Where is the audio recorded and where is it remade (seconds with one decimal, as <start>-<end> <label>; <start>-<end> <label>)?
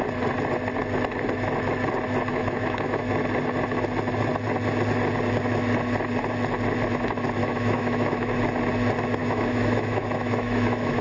0.0-2.3 recorded; 2.3-3.1 remade; 3.1-7.4 recorded; 7.4-8.4 remade; 8.4-9.2 recorded; 9.2-11.0 remade